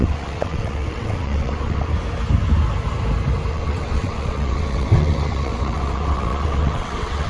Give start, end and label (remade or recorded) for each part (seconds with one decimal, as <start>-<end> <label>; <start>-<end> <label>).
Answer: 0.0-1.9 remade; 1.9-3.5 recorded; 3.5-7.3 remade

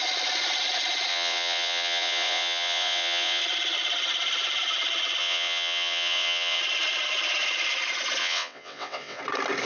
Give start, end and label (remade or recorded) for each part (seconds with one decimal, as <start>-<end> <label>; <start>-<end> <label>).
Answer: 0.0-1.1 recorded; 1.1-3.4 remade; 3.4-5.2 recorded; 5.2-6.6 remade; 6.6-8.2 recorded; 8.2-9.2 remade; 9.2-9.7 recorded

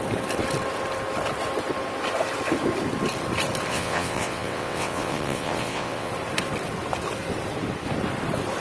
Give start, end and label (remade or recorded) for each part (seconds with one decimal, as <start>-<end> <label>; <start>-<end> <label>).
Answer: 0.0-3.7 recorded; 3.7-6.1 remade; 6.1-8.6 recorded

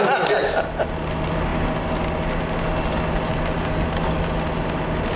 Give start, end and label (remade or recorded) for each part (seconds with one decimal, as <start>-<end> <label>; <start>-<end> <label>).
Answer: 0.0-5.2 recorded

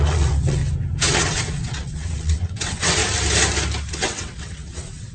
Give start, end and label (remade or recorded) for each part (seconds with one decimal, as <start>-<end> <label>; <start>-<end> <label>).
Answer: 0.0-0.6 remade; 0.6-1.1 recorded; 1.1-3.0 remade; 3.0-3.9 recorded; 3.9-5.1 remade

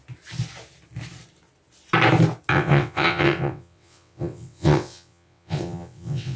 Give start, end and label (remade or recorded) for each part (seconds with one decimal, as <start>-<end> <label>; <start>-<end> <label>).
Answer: 0.0-2.5 recorded; 2.5-6.4 remade

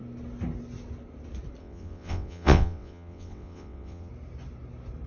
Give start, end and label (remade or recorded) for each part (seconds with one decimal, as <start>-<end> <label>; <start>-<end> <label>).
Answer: 0.0-1.6 recorded; 1.6-4.1 remade; 4.1-5.1 recorded